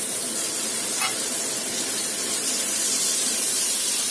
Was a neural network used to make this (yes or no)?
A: no